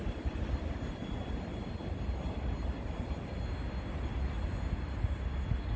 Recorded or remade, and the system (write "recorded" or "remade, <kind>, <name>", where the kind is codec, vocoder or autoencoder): recorded